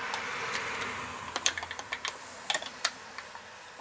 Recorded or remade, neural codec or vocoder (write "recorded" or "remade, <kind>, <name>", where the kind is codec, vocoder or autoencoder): recorded